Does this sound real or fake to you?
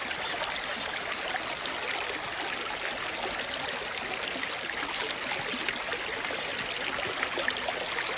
real